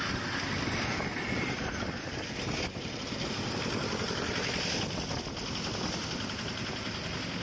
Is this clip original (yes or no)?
yes